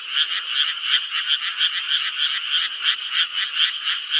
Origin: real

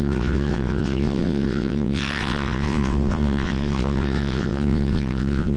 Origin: fake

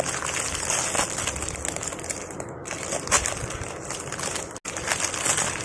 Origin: real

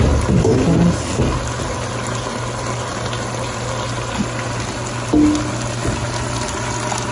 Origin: real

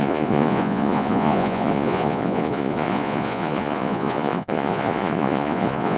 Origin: fake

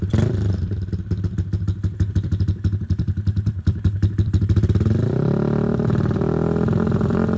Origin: fake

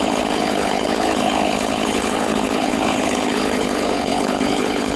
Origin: fake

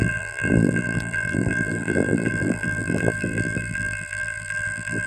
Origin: fake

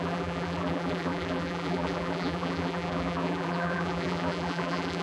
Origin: fake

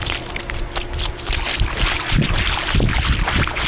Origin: real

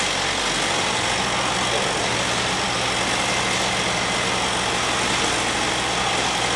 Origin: real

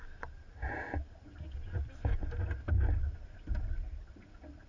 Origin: real